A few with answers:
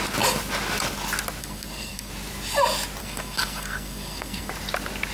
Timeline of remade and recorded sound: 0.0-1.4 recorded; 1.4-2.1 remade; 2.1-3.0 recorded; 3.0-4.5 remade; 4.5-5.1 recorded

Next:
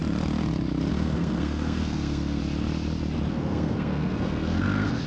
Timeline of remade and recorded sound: 0.0-0.9 recorded; 0.9-2.4 remade; 2.4-3.3 recorded; 3.3-5.1 remade

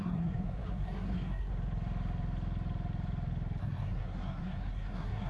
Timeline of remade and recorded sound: 0.0-1.5 remade; 1.5-3.6 recorded; 3.6-5.3 remade

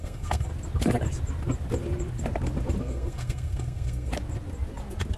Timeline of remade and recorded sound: 0.0-0.5 remade; 0.5-2.8 recorded; 2.8-4.1 remade; 4.1-5.2 recorded